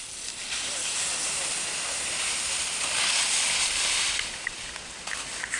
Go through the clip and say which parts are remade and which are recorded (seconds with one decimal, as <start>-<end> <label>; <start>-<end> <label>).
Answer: 0.0-5.6 recorded